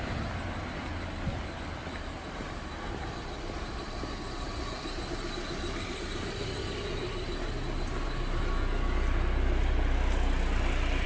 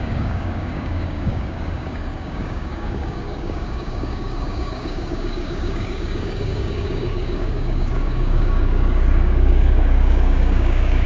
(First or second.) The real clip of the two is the first